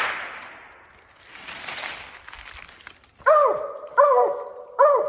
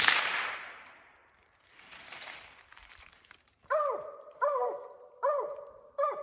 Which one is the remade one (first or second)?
second